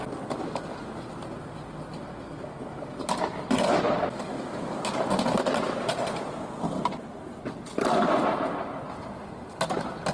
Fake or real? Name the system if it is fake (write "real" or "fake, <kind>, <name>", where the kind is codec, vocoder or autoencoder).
real